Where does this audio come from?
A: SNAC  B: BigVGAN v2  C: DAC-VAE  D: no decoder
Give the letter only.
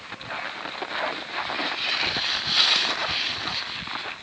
D